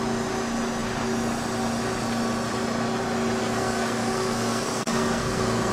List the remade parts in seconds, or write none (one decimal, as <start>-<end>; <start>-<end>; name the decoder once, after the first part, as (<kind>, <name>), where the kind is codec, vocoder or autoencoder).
3.4-5.7 (codec, SNAC)

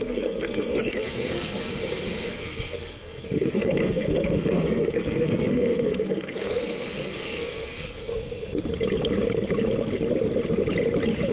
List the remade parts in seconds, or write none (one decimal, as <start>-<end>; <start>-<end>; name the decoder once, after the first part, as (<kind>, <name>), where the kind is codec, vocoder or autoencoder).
0.0-1.7 (codec, SNAC); 2.3-8.1

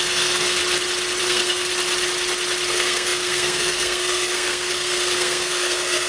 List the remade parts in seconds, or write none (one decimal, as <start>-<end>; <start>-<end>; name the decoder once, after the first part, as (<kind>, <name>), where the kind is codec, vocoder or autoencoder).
0.0-0.6 (codec, SNAC); 1.2-1.7; 2.7-6.1

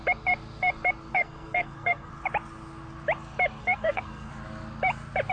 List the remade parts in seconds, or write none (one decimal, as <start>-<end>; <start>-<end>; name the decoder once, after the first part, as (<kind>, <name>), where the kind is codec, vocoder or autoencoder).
1.1-2.1 (codec, SNAC); 3.6-4.3

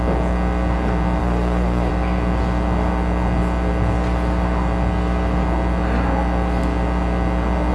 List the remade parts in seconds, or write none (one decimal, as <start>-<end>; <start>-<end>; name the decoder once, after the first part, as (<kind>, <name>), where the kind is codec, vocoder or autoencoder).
1.2-1.9 (codec, SNAC)

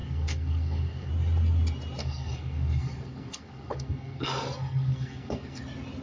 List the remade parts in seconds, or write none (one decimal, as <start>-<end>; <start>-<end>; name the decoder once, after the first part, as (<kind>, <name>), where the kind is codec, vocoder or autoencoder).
0.0-1.1 (codec, SNAC); 2.0-5.6

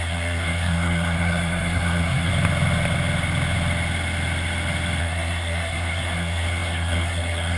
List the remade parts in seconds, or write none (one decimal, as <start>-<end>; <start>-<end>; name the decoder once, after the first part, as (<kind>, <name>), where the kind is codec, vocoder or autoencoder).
0.0-2.3 (codec, SNAC); 5.0-7.6